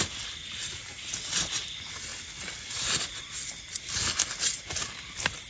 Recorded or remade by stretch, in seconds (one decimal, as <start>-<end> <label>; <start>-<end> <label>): 0.0-5.5 recorded